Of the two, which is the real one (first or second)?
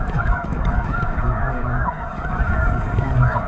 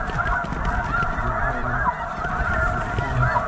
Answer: second